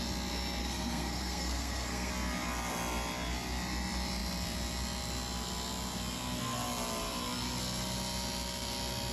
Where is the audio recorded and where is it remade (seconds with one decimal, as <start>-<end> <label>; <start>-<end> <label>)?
0.0-0.6 recorded; 0.6-2.1 remade; 2.1-9.1 recorded